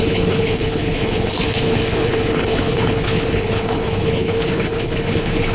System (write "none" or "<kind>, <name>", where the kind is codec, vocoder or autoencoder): codec, HILCodec